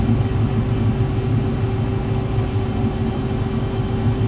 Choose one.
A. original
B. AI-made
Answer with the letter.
A